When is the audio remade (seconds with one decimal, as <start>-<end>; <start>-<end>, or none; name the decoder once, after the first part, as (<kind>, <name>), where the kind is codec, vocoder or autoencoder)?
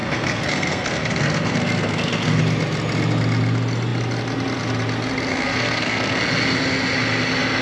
0.0-2.4 (codec, SNAC); 5.3-6.2